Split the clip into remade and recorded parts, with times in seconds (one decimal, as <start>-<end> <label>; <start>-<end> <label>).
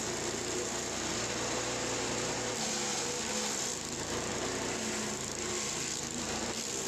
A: 0.0-6.9 recorded